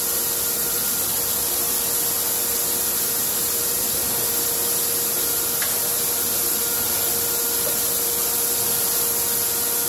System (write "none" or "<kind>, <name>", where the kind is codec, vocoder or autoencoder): none